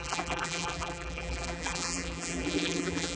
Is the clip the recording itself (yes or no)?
no